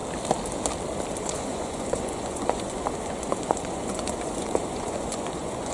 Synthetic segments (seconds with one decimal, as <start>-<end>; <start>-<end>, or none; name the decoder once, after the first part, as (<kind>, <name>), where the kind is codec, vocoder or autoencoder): 1.2-5.7 (vocoder, Vocos)